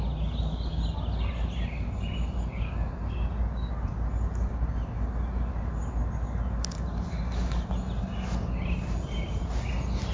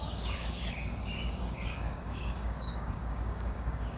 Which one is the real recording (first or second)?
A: first